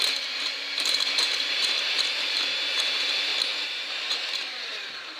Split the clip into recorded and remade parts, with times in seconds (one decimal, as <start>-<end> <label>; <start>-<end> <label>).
0.0-3.3 remade; 3.3-3.9 recorded; 3.9-5.2 remade